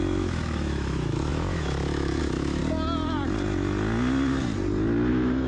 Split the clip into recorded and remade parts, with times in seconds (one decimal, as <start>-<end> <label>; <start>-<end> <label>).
0.0-2.6 remade; 2.6-5.1 recorded; 5.1-5.5 remade